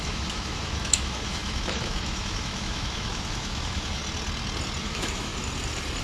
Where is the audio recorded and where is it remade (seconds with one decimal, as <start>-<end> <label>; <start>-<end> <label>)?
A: 0.0-4.0 remade; 4.0-4.8 recorded; 4.8-5.3 remade; 5.3-6.0 recorded